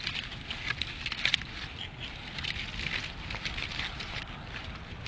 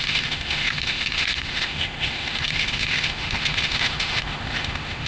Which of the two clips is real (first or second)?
first